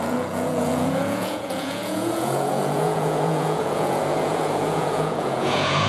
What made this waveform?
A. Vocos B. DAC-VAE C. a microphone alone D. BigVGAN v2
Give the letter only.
A